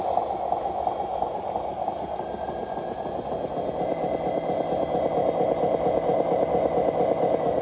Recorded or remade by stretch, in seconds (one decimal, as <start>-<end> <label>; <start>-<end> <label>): 0.0-1.1 recorded; 1.1-1.8 remade; 1.8-7.6 recorded